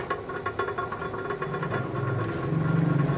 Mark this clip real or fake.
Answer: real